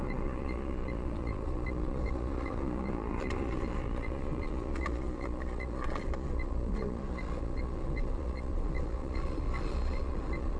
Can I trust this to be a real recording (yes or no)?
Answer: no